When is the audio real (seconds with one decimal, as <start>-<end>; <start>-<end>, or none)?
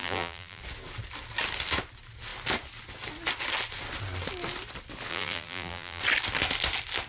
0.6-5.1; 6.0-7.1